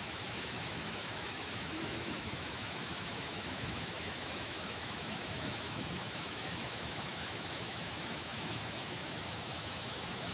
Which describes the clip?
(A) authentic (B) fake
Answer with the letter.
B